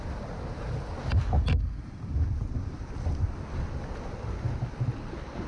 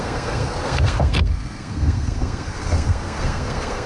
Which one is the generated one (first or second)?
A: second